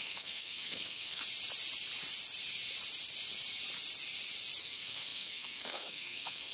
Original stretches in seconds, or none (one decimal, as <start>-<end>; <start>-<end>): 1.2-4.6